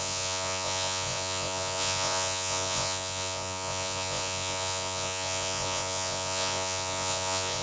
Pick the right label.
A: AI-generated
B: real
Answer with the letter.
A